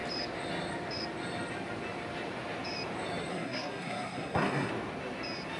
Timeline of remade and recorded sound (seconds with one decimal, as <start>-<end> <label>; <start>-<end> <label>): 0.0-3.3 recorded; 3.3-4.7 remade; 4.7-5.6 recorded